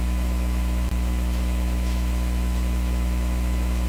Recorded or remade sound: remade